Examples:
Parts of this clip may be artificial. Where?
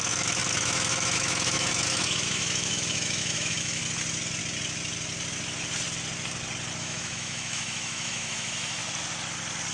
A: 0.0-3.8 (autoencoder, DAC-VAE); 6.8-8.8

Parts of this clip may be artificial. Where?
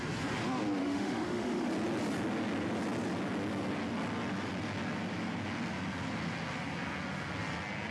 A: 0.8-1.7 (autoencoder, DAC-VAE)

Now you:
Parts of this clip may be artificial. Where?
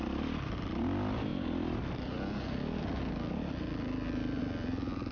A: 0.0-5.1 (vocoder, BigVGAN v2)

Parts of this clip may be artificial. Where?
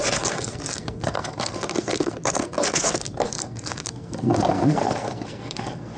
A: 0.0-6.0 (codec, SNAC)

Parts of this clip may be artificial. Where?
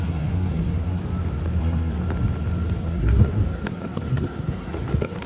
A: 0.0-1.0 (codec, SNAC); 1.6-2.0; 2.8-5.3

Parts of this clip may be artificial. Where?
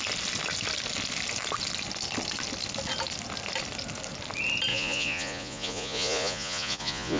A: 4.7-7.2 (vocoder, Vocos)